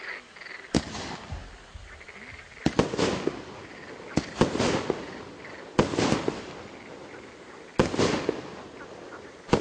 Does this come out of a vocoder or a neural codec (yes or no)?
no